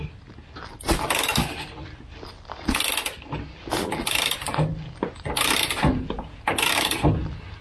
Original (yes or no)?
yes